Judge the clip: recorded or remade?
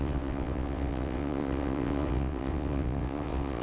remade